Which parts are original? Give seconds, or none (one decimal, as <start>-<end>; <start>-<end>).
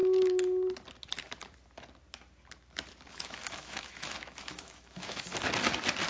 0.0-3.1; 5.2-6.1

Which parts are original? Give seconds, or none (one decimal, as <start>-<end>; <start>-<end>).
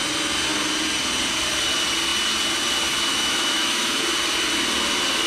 0.0-3.1; 4.0-5.3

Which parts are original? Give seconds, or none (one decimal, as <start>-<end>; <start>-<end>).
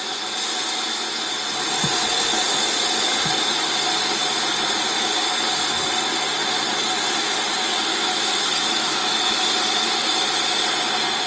0.0-7.9; 9.5-11.3